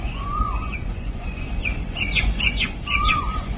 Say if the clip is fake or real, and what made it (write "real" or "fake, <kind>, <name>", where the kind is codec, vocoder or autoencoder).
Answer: fake, vocoder, Vocos